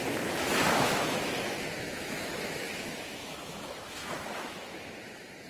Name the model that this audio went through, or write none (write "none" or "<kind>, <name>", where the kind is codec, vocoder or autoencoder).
autoencoder, DAC-VAE